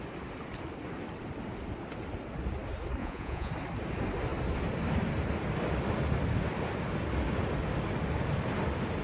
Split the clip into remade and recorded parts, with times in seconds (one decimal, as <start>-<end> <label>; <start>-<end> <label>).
0.0-3.0 recorded; 3.0-3.5 remade; 3.5-9.0 recorded